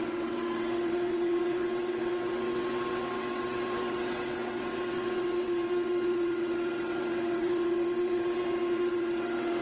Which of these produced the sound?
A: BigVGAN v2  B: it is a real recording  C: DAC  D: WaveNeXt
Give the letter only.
D